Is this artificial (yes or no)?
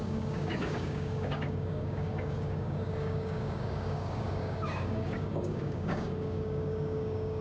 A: yes